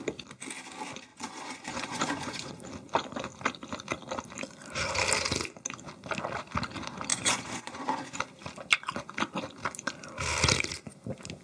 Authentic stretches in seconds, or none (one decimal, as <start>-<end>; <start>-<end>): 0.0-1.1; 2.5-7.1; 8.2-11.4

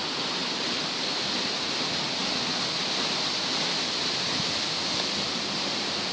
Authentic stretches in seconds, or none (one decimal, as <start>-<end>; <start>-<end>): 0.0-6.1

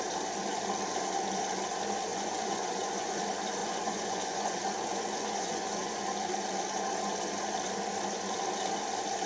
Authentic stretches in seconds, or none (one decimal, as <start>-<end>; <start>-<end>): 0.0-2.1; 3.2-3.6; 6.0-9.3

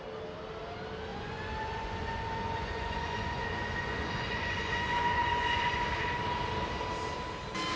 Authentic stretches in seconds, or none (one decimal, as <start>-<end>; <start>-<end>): 0.0-1.1; 5.8-7.8

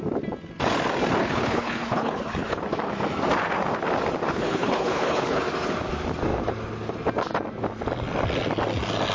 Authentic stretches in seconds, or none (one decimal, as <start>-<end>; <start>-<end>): 0.0-1.2; 2.6-4.3; 5.4-9.1

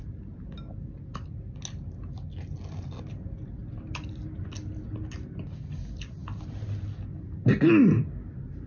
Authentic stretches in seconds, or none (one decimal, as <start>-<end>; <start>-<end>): 0.0-8.7

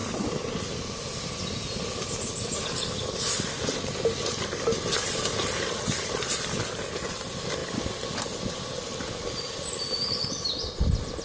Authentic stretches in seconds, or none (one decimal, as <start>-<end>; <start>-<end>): 0.0-11.2